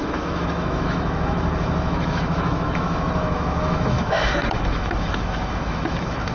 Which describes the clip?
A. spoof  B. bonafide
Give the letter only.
A